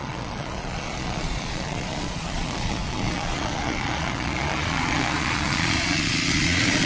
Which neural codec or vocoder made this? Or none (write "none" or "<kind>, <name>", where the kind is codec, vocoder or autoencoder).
vocoder, Vocos